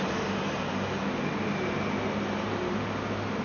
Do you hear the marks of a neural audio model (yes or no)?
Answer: no